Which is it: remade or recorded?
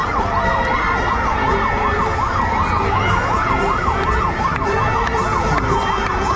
recorded